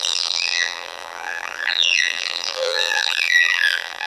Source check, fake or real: fake